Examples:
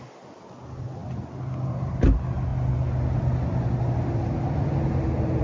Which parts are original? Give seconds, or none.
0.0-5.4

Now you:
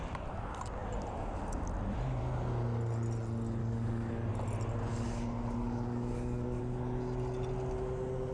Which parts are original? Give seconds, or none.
0.0-3.6; 4.3-4.9; 6.6-8.3

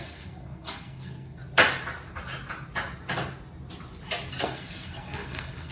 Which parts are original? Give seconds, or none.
1.4-4.4

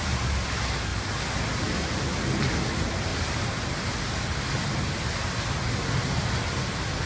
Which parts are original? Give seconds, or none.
0.0-3.1; 3.9-7.1

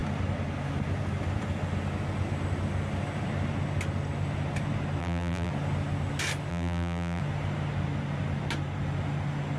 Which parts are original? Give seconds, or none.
0.0-5.0; 5.5-6.5; 7.2-9.6

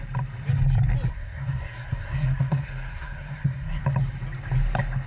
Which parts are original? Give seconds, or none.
0.0-1.1; 3.8-5.1

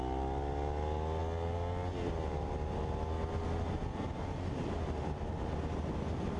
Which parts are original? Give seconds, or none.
0.0-6.4

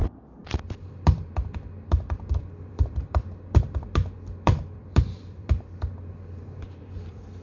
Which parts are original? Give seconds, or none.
none